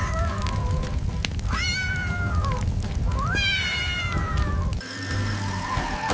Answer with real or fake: real